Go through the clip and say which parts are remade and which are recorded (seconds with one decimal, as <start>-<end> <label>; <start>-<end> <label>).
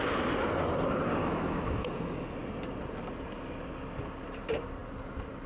0.0-1.2 recorded; 1.2-1.9 remade; 1.9-5.5 recorded